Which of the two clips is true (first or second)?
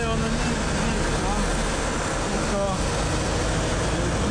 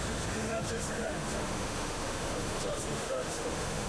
first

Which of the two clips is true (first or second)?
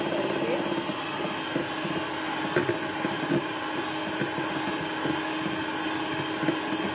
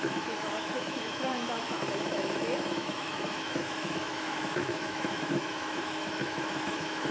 first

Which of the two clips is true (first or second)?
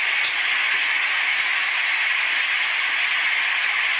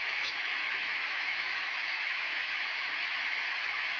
first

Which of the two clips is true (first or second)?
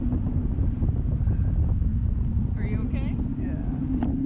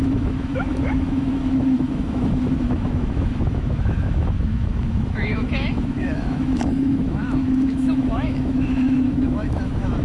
first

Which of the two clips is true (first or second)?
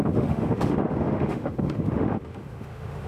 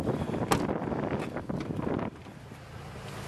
second